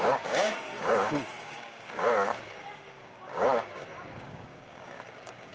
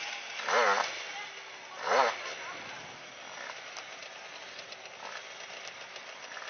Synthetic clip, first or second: first